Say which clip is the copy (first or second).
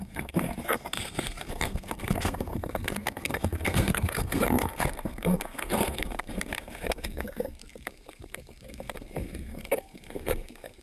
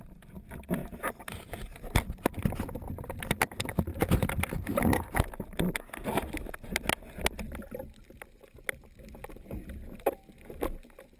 first